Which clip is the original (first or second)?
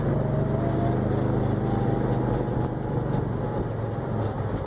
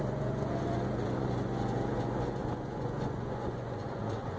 first